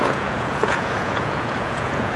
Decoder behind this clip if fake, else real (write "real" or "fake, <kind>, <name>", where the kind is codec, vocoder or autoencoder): fake, vocoder, Vocos